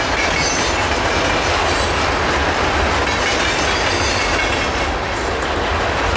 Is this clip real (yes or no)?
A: yes